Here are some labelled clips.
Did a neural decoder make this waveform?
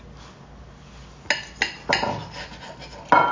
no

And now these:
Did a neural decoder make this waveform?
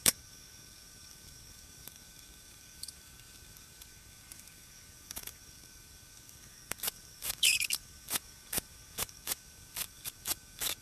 yes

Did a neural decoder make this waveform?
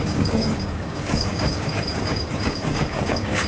yes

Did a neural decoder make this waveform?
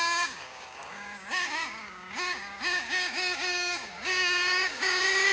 yes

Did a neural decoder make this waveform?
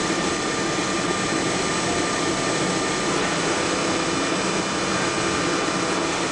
no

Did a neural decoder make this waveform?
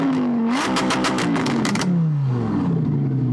yes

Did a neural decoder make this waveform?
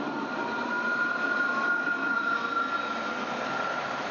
no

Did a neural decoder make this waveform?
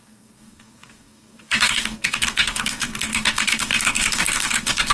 yes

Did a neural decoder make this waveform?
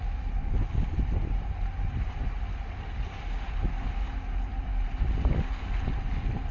no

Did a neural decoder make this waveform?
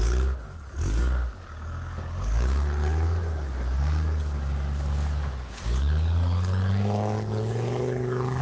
yes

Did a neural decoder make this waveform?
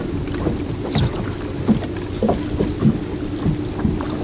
no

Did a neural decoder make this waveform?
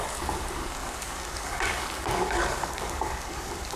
yes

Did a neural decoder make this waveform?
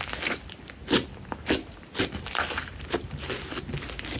no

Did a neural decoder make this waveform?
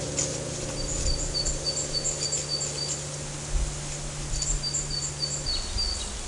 no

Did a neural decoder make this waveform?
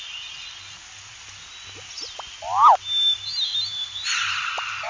no